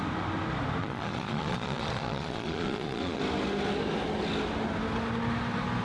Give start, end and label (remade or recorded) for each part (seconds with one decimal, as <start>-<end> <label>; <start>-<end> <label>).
0.0-0.8 recorded; 0.8-3.2 remade; 3.2-5.8 recorded